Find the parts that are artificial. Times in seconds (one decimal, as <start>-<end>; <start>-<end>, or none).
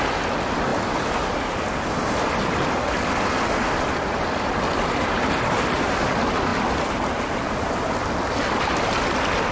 none